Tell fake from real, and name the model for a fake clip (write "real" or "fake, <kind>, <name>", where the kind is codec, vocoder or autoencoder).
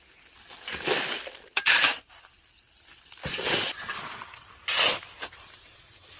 fake, vocoder, BigVGAN v2